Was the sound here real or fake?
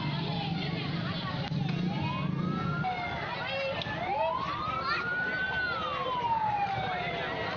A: real